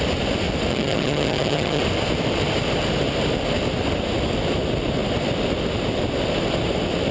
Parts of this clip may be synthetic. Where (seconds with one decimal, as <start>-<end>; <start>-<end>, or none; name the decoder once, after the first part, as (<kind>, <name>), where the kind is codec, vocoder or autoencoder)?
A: 0.7-1.8 (vocoder, HiFi-GAN)